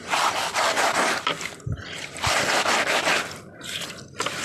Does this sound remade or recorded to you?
remade